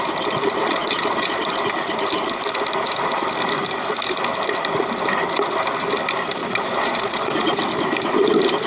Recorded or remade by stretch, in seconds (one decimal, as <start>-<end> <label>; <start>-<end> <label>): 0.0-0.6 recorded; 0.6-1.4 remade; 1.4-6.4 recorded; 6.4-7.6 remade; 7.6-8.7 recorded